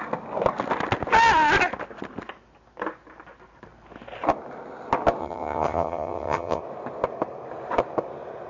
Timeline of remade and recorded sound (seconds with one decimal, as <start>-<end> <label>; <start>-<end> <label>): 0.0-5.2 recorded; 5.2-6.6 remade; 6.6-8.5 recorded